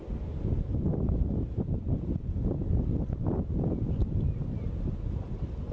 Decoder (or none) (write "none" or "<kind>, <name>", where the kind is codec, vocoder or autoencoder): none